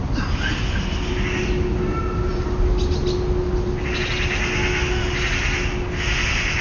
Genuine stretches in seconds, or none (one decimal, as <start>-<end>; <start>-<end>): 0.0-6.6